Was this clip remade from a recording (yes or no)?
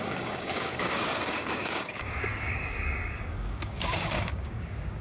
yes